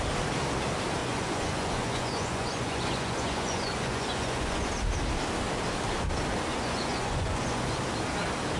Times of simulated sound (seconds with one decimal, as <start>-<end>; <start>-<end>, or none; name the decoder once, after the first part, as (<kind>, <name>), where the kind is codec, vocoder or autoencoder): 1.0-4.7 (vocoder, Vocos); 6.5-7.8